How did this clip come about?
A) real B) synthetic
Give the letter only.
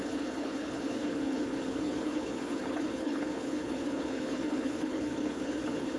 B